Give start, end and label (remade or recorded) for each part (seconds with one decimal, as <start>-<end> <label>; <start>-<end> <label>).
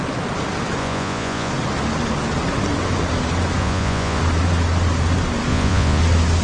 0.0-0.8 recorded; 0.8-1.5 remade; 1.5-3.6 recorded; 3.6-4.2 remade; 4.2-5.5 recorded; 5.5-6.0 remade; 6.0-6.4 recorded